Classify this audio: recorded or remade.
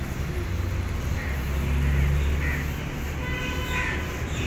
recorded